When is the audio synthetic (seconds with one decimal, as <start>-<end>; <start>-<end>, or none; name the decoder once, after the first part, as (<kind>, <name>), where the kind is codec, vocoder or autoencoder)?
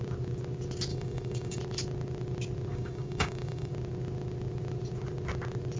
0.9-1.6 (codec, DAC); 2.7-3.7